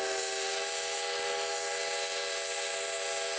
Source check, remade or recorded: recorded